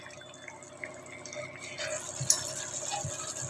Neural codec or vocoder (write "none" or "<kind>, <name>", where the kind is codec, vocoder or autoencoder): none